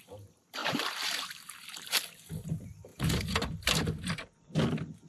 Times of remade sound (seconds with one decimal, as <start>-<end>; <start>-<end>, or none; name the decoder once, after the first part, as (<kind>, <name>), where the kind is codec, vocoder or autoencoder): 0.6-2.0 (vocoder, BigVGAN v2)